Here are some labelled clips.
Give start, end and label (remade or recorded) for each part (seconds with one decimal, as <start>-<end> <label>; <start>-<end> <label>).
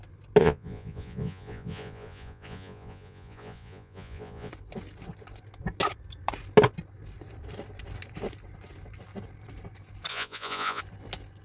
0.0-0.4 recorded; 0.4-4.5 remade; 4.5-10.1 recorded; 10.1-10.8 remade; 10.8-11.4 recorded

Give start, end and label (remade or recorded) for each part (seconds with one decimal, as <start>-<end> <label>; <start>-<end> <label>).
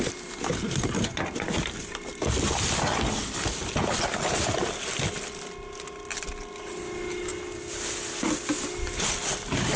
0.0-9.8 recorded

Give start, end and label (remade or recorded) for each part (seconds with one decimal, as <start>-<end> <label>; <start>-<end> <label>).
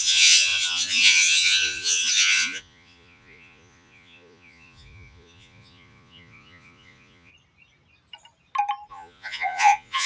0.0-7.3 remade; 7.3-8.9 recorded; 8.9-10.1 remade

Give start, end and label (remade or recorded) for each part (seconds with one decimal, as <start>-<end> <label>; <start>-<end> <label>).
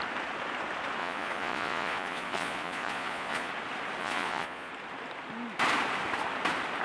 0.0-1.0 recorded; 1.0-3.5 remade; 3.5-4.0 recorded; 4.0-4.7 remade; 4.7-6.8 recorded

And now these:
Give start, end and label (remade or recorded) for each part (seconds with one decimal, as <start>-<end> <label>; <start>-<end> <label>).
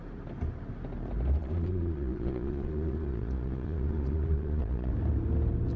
0.0-1.4 recorded; 1.4-4.9 remade; 4.9-5.8 recorded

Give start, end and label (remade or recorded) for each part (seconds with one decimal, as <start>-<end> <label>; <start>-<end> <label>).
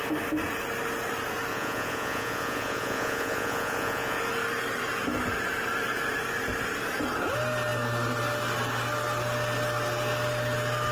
0.0-1.5 recorded; 1.5-4.2 remade; 4.2-10.9 recorded